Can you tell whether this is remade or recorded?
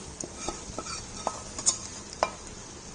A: recorded